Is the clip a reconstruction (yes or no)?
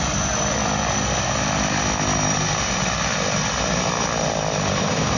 yes